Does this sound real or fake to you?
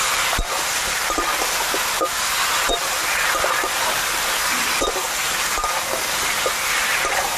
real